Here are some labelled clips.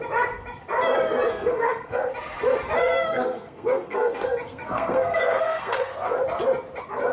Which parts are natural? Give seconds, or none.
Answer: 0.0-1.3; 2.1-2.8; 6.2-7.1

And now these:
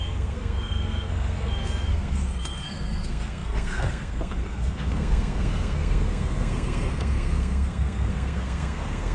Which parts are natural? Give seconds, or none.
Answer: none

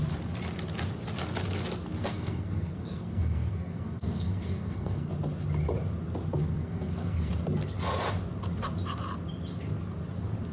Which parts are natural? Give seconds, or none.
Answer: 0.0-2.0; 5.1-6.3; 7.3-10.5

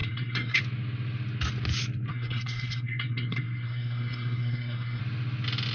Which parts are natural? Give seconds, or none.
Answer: 0.6-2.1; 5.0-5.7